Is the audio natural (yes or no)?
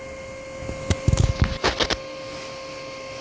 yes